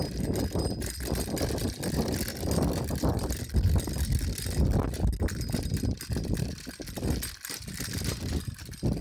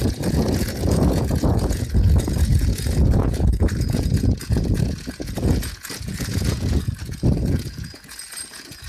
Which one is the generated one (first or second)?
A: second